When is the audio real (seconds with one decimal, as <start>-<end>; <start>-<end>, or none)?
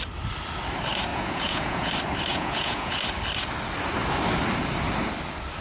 0.0-1.1; 1.9-2.3; 3.0-5.6